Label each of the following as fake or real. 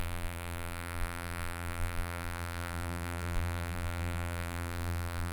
fake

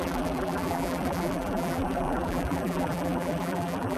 fake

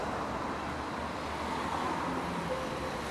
real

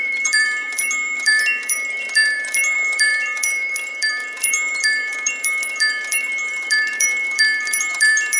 fake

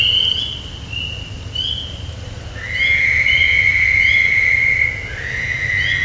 real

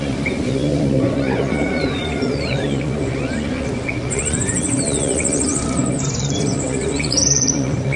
fake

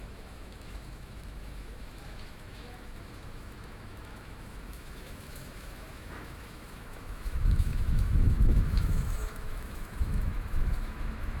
fake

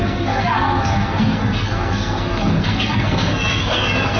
fake